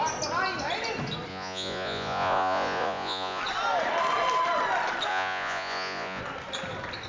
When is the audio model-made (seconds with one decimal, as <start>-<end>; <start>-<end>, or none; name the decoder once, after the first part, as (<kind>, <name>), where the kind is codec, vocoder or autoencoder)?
1.3-3.4 (vocoder, Vocos); 5.1-6.2

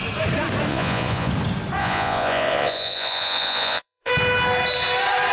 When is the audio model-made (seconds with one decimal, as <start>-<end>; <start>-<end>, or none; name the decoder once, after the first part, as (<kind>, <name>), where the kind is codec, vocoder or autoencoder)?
0.7-1.3 (vocoder, Vocos); 1.8-4.1

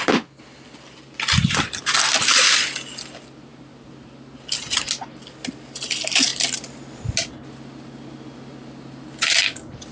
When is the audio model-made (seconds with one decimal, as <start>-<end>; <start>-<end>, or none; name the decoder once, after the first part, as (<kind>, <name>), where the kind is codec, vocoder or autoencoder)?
none

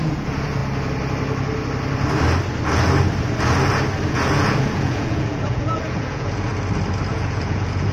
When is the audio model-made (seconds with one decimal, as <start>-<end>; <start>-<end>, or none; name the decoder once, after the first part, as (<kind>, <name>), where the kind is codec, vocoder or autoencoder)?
0.0-0.6 (vocoder, Vocos); 4.1-6.5; 7.1-7.9